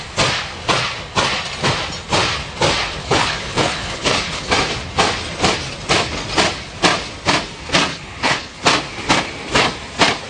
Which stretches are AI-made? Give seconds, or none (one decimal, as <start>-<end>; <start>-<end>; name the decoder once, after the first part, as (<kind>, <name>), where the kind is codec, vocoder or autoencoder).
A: 3.0-4.5 (codec, HILCodec); 7.9-8.6

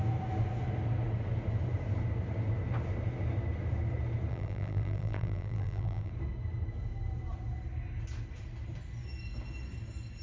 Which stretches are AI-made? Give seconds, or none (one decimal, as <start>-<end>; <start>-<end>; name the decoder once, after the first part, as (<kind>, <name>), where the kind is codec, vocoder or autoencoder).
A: 4.3-6.1 (vocoder, BigVGAN v2)

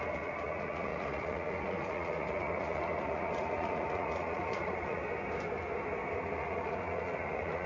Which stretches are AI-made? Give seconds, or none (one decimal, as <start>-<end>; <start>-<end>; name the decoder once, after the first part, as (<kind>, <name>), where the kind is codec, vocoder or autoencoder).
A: 0.0-5.0 (vocoder, Vocos); 6.2-7.7

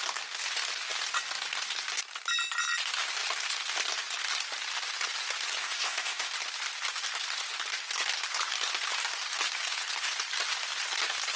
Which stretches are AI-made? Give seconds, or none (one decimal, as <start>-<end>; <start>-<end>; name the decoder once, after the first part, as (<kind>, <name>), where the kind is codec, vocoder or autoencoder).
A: 5.6-6.3 (codec, ZipCodec)

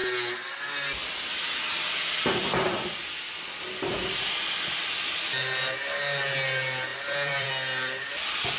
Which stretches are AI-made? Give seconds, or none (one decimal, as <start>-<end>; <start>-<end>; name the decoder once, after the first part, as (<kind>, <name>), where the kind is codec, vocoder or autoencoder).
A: 2.4-3.0 (vocoder, BigVGAN v2); 6.9-7.5

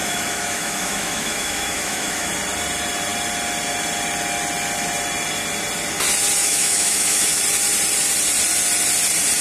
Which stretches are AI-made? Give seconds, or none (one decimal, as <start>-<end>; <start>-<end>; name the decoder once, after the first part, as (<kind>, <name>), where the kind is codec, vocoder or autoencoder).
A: 0.0-2.3 (autoencoder, DAC-VAE); 6.4-7.4

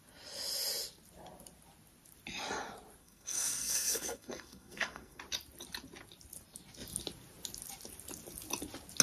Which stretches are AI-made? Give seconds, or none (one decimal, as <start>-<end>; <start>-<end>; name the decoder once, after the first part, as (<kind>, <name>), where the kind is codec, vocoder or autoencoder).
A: 3.0-5.2 (codec, SNAC)

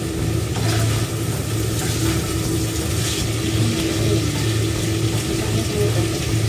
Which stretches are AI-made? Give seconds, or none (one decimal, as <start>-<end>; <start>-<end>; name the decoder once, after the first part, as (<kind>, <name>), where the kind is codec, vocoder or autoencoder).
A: none